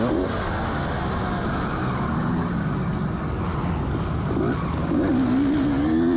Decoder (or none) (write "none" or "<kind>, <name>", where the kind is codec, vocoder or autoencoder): none